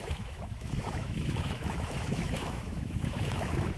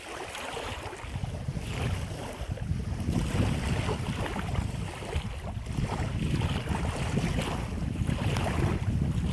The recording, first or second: second